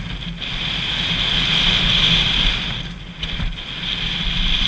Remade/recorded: recorded